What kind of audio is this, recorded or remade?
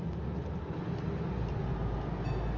recorded